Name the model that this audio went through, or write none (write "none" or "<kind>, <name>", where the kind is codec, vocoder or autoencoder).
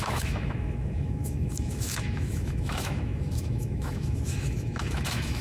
autoencoder, DAC-VAE